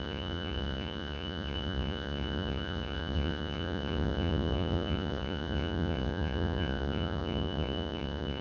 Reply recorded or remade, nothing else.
remade